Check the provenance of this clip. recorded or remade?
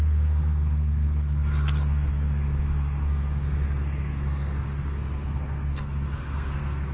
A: remade